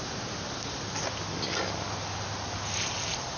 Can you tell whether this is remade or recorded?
recorded